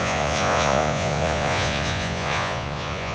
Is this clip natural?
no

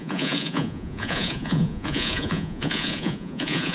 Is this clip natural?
no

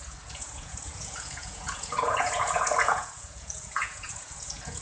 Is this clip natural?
no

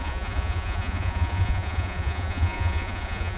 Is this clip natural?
no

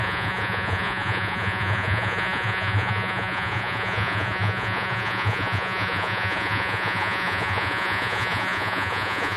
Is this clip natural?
no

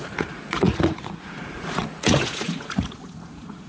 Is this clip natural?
no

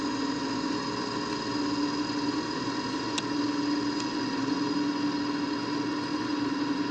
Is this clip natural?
yes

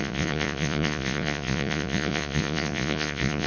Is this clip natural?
no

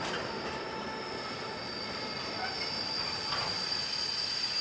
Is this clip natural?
yes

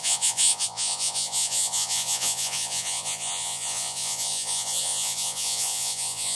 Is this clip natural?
no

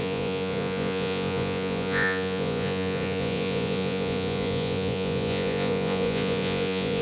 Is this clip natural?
no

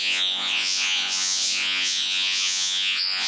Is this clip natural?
no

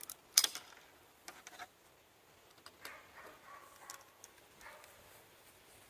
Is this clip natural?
yes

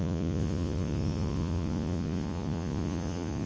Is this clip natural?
no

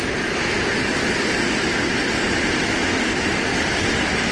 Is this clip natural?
yes